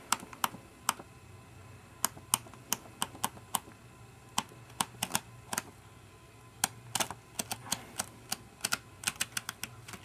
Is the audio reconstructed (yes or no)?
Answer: no